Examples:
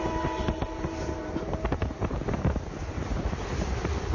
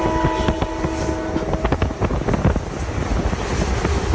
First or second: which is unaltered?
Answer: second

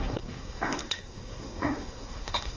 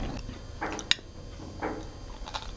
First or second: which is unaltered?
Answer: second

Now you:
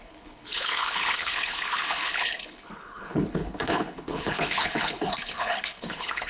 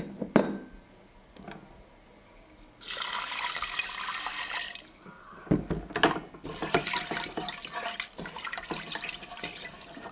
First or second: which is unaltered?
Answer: second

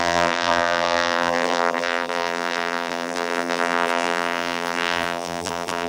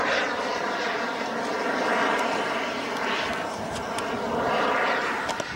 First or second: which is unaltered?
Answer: second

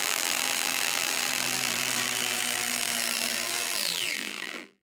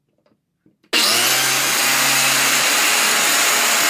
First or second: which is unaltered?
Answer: second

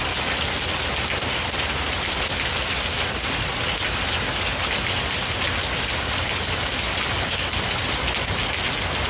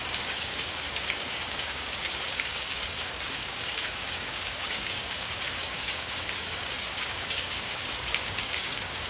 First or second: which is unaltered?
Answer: first